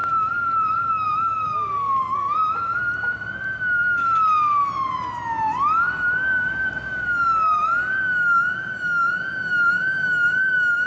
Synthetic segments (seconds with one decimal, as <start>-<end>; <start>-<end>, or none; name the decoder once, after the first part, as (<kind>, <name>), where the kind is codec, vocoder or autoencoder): 0.0-0.9 (vocoder, BigVGAN v2)